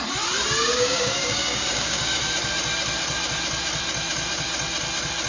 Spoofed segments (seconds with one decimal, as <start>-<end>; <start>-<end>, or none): 0.6-2.2